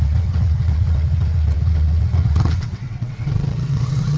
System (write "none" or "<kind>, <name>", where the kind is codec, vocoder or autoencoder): vocoder, WaveNeXt